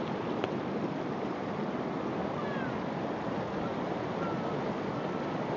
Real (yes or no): yes